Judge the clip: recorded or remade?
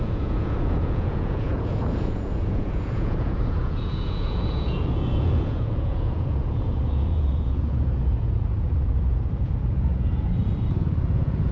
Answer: remade